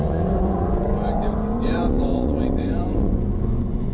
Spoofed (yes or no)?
yes